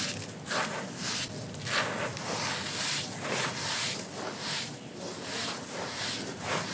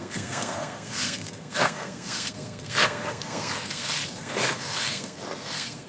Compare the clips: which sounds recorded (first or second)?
first